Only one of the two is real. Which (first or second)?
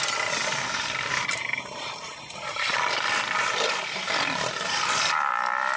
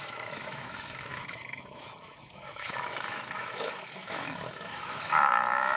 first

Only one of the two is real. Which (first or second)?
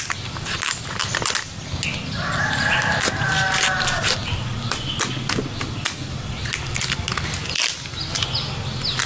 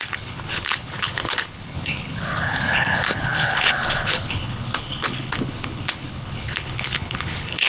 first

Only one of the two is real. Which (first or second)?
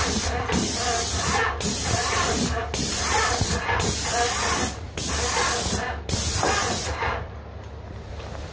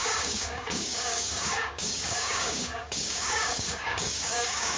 first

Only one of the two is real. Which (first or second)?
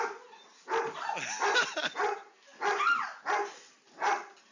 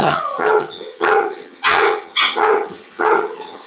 first